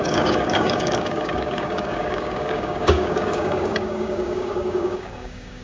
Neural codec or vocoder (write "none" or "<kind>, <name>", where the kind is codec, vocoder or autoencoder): codec, DAC